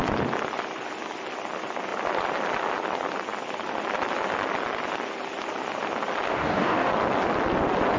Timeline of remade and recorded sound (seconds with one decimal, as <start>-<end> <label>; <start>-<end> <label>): 0.0-6.3 recorded; 6.3-6.9 remade; 6.9-8.0 recorded